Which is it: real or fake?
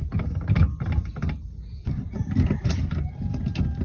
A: real